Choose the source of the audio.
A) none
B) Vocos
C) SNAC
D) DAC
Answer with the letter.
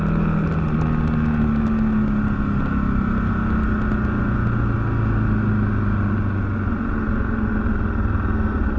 A